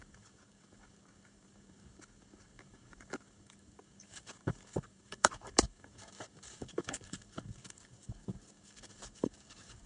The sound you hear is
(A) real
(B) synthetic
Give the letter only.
B